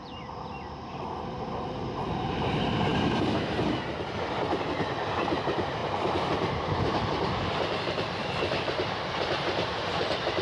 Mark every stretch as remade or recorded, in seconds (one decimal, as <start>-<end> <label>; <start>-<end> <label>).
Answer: 0.0-2.9 remade; 2.9-5.3 recorded; 5.3-10.4 remade